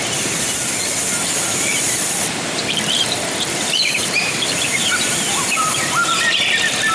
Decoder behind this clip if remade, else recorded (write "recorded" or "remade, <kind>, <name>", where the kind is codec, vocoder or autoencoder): remade, vocoder, BigVGAN v2